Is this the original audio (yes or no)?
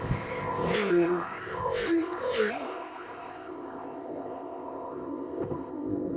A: no